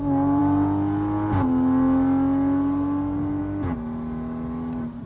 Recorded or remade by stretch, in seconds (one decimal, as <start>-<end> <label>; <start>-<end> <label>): 0.0-5.1 recorded